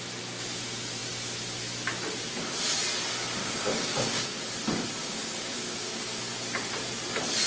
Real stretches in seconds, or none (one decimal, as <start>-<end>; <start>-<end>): 0.0-3.4; 4.4-5.0; 6.0-7.5

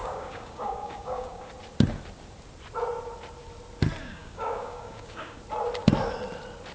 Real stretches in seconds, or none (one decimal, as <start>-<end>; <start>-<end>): 1.5-4.0; 5.4-6.7

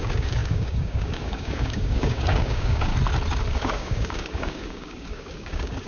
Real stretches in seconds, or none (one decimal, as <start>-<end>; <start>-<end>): 2.9-3.5